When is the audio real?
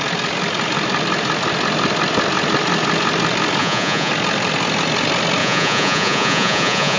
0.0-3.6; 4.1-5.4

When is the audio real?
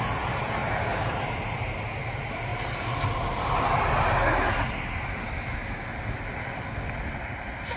0.0-7.8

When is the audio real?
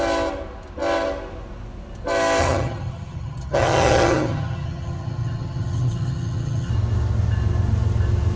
0.0-2.4; 6.7-8.4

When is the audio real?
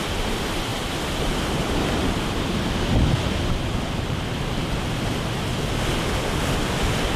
0.0-0.7; 4.2-7.2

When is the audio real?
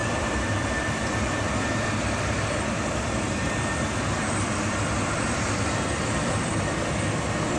6.5-7.6